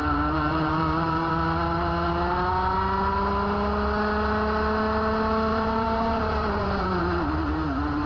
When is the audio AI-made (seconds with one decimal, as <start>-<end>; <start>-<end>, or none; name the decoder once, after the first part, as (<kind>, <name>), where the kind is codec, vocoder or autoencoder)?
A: 0.0-1.3 (vocoder, BigVGAN v2); 5.5-7.0